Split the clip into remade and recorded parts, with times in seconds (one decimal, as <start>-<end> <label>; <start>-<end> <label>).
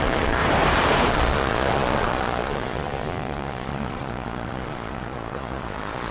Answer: 0.0-0.4 remade; 0.4-1.1 recorded; 1.1-6.1 remade